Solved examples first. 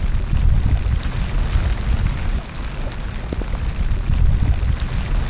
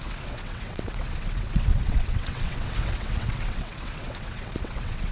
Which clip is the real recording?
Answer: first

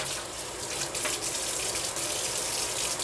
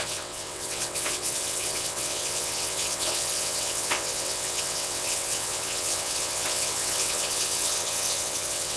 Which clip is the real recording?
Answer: first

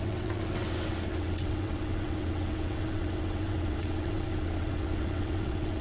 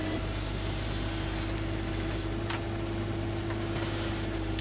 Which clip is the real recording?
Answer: second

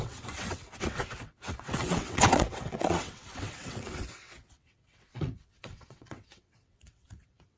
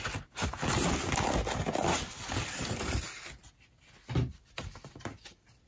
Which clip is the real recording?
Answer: second